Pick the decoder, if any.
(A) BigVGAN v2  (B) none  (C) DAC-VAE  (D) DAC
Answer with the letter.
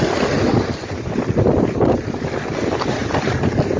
B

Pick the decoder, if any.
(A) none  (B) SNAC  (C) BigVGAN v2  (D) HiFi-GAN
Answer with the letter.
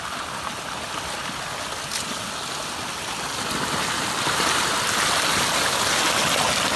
A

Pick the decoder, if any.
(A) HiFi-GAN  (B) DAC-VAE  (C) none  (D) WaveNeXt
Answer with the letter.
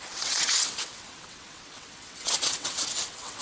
D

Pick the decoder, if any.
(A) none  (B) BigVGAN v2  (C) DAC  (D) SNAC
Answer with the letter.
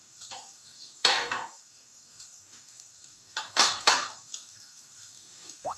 C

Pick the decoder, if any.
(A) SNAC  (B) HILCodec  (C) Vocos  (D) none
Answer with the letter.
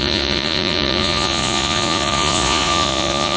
C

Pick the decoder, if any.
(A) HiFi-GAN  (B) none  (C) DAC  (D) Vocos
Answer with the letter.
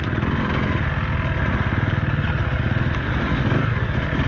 B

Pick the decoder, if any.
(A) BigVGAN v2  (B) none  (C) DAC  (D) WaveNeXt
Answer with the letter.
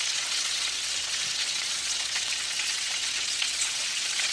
D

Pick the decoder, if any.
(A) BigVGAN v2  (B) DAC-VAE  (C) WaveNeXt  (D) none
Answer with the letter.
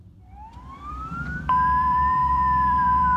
A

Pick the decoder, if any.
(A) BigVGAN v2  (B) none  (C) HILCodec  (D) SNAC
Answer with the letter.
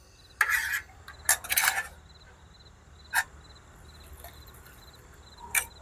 B